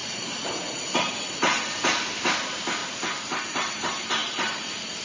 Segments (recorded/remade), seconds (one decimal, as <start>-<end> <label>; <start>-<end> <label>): 0.0-2.1 recorded; 2.1-2.8 remade; 2.8-3.4 recorded; 3.4-5.0 remade